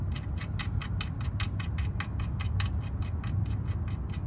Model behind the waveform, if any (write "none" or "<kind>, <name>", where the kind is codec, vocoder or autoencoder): none